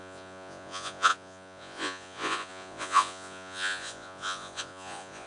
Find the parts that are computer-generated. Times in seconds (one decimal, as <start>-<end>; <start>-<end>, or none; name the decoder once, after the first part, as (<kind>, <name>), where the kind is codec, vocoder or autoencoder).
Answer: 0.0-5.3 (vocoder, Vocos)